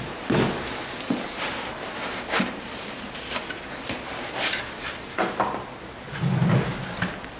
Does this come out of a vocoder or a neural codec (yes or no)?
no